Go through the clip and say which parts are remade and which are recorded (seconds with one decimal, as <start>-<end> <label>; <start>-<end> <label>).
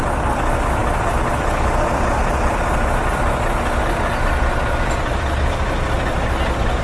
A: 0.0-6.8 recorded